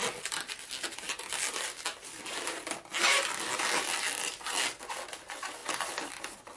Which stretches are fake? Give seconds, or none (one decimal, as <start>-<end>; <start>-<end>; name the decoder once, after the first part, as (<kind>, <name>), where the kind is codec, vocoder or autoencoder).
none